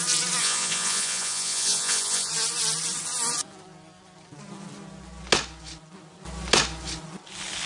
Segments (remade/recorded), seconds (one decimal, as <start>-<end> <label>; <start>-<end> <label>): 0.0-0.4 recorded; 0.4-2.3 remade; 2.3-7.7 recorded